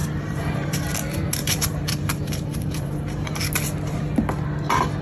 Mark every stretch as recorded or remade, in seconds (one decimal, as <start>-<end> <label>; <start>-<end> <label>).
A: 0.0-0.8 remade; 0.8-1.4 recorded; 1.4-3.4 remade; 3.4-5.0 recorded